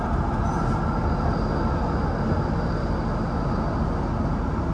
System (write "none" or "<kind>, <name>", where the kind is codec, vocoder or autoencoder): none